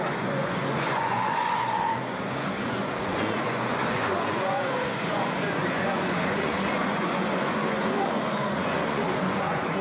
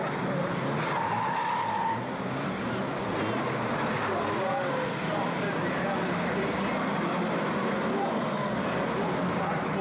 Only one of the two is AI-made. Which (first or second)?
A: first